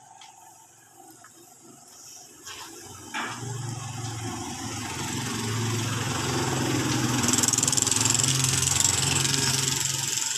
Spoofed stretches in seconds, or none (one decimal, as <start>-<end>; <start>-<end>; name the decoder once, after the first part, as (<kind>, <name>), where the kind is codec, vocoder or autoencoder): 8.3-9.5 (codec, SNAC)